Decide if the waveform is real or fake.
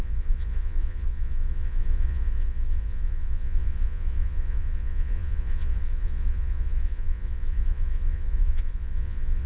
fake